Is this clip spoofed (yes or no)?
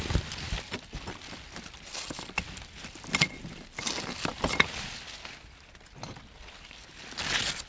no